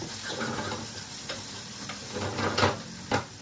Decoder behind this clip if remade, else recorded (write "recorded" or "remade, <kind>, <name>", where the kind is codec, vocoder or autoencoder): recorded